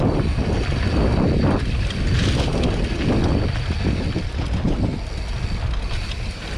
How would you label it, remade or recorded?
recorded